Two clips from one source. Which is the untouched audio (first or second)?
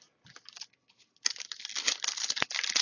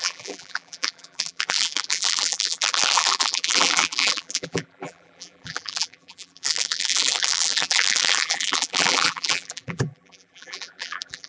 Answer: first